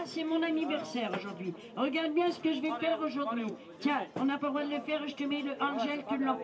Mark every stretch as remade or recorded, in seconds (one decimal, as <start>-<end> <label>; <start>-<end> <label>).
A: 0.0-2.9 recorded; 2.9-4.4 remade; 4.4-6.4 recorded